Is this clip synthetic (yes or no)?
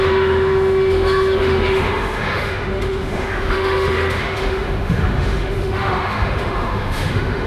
yes